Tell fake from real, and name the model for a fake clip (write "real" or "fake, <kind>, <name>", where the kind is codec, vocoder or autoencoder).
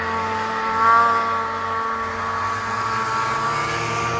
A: real